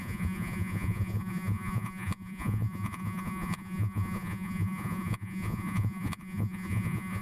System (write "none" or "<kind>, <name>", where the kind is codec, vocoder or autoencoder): vocoder, Vocos